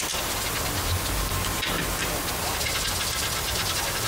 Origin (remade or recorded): recorded